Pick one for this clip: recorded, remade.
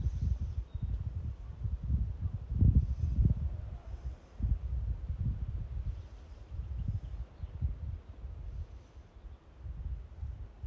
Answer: recorded